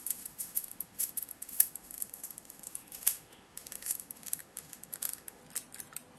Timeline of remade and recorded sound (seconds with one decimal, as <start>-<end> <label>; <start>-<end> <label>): 0.0-5.4 remade; 5.4-6.2 recorded